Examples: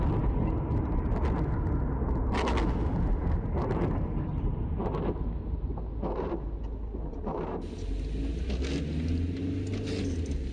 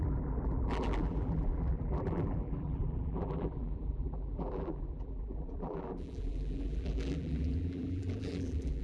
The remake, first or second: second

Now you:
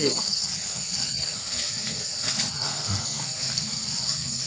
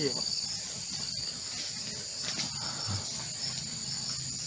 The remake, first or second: first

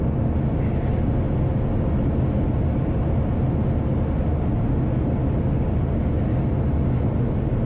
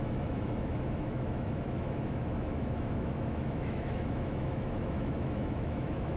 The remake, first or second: second